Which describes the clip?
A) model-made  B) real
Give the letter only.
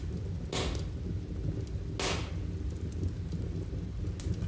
B